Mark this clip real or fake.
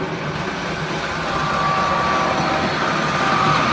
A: real